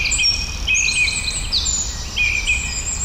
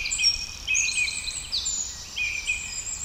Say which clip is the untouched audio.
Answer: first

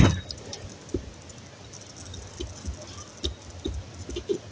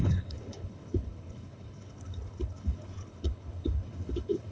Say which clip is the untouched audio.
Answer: first